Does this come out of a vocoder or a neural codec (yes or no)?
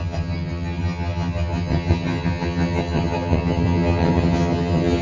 yes